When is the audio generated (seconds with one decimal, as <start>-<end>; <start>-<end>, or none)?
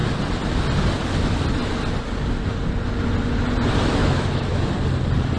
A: 4.0-4.7